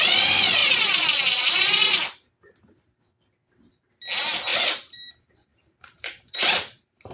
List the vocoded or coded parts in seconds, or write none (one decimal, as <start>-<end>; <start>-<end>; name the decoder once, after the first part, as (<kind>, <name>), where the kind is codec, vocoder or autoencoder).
0.6-1.8 (vocoder, BigVGAN v2); 4.5-5.1; 5.5-7.1